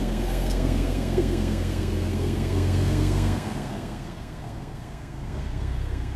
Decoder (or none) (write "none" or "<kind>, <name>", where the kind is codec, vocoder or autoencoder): codec, SNAC